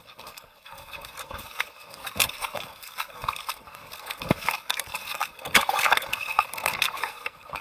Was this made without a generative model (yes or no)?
no